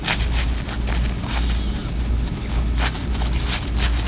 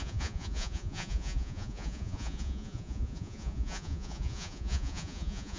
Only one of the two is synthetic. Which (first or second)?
second